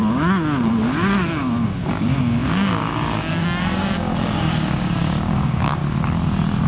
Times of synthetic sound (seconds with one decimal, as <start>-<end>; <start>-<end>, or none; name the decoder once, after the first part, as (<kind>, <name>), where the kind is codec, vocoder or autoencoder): 0.0-5.8 (codec, DAC)